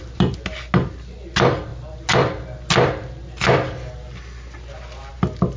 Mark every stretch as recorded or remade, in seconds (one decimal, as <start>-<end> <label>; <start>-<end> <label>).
0.0-5.6 recorded